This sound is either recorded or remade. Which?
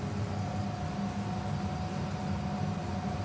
recorded